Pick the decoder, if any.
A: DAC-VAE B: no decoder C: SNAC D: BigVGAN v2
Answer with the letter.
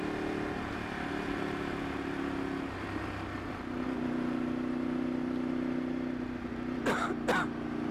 B